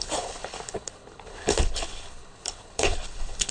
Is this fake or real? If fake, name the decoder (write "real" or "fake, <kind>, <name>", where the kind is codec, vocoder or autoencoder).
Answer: fake, codec, HILCodec